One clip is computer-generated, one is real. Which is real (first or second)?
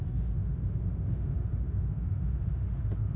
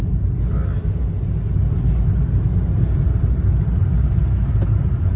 second